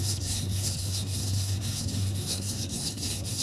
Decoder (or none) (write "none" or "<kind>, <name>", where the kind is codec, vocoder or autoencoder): codec, SNAC